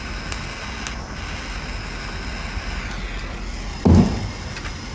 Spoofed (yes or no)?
no